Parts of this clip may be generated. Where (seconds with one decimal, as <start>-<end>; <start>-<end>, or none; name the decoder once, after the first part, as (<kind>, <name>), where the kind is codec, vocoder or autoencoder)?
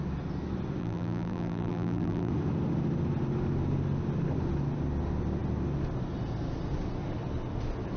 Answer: 0.8-2.3 (vocoder, BigVGAN v2)